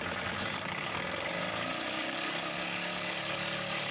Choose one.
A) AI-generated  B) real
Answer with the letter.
A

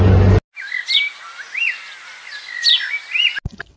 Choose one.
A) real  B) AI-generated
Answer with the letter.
A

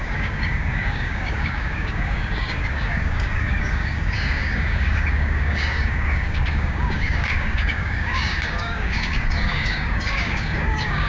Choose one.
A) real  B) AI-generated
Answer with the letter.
B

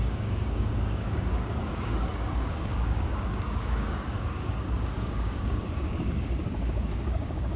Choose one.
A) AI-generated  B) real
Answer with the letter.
A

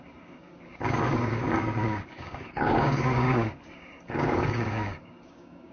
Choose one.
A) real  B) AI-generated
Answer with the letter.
B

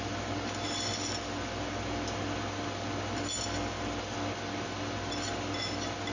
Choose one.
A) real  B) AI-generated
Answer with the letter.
A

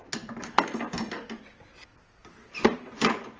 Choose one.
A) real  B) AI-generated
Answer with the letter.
A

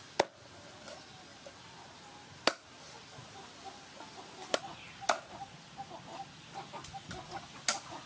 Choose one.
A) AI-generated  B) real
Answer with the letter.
B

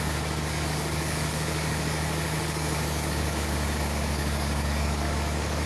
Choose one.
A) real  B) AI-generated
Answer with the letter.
B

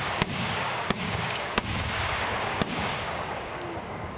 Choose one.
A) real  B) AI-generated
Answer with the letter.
B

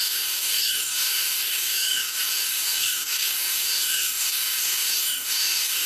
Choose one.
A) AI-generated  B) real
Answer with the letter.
A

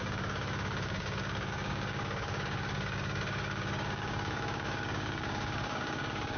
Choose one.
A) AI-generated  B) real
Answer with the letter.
A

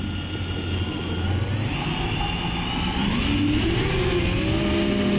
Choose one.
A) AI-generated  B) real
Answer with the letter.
B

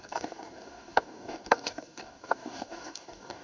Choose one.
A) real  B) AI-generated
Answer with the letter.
B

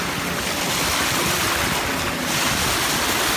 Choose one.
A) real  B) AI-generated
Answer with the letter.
A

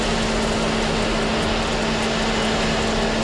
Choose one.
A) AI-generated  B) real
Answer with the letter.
B